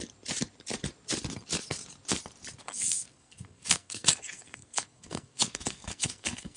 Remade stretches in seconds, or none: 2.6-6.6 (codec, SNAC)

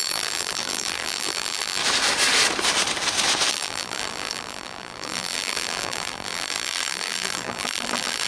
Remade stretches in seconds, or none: 0.0-1.8 (vocoder, BigVGAN v2); 3.5-8.3

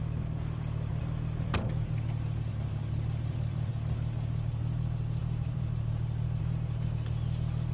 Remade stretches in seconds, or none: 0.9-1.6 (vocoder, BigVGAN v2); 2.5-3.7; 5.2-6.4

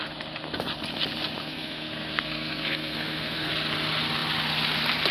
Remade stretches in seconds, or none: 1.4-3.5 (codec, SNAC)

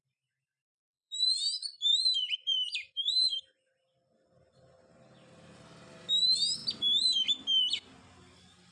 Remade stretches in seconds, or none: 0.0-3.4 (vocoder, BigVGAN v2)

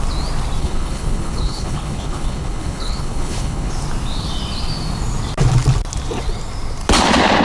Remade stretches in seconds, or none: 0.6-3.7 (codec, HILCodec)

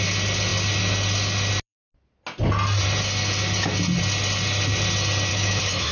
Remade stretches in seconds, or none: 5.3-5.9 (autoencoder, DAC-VAE)